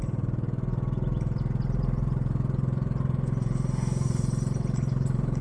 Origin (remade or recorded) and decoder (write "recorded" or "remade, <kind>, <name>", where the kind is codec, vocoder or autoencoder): remade, vocoder, BigVGAN v2